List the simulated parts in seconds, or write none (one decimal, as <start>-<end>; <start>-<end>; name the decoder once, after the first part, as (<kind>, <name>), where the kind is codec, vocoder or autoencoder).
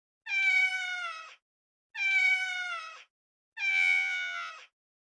3.7-4.5 (vocoder, WaveNeXt)